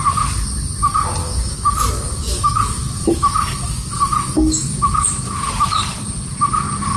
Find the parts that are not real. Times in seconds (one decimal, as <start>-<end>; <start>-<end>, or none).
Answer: 1.2-5.4